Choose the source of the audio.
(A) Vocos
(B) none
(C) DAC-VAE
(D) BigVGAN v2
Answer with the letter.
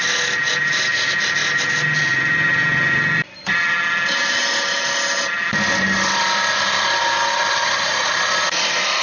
B